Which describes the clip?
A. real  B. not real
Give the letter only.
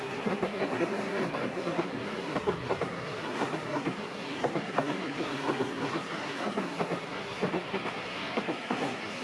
B